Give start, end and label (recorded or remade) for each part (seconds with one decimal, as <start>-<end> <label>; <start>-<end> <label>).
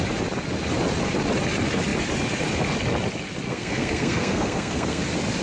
0.0-3.5 recorded; 3.5-5.0 remade; 5.0-5.4 recorded